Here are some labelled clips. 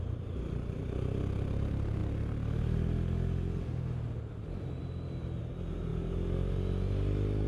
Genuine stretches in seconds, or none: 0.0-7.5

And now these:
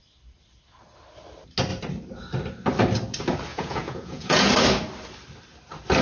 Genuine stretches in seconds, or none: 0.0-3.5; 4.5-6.0

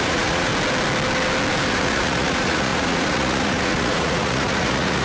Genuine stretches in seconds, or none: 0.5-1.7

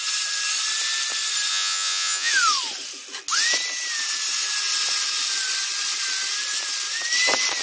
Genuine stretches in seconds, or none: 0.0-1.5; 2.3-7.6

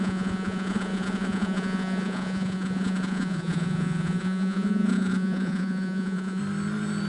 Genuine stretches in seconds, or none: 6.4-7.1